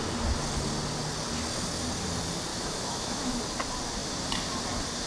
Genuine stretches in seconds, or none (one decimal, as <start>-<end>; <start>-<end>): 0.0-2.5; 3.4-5.1